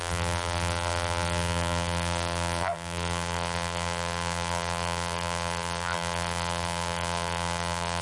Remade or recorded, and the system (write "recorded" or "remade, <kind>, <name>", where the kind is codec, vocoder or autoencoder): remade, vocoder, BigVGAN v2